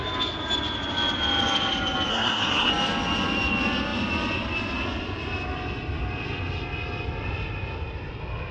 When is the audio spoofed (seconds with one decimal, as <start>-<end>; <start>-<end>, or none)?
2.1-2.7